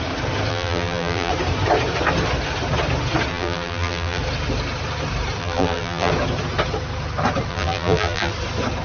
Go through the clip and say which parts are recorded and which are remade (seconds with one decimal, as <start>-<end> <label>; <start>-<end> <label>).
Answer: 0.0-0.5 recorded; 0.5-1.3 remade; 1.3-3.3 recorded; 3.3-4.2 remade; 4.2-5.4 recorded; 5.4-6.1 remade; 6.1-7.5 recorded; 7.5-8.3 remade; 8.3-8.8 recorded